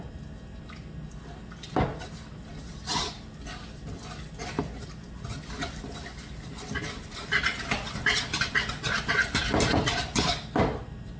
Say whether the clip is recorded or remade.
recorded